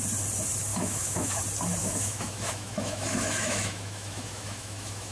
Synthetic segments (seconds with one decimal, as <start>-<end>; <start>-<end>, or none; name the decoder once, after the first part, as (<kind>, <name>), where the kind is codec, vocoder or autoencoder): 0.7-1.4 (autoencoder, DAC-VAE); 1.8-5.1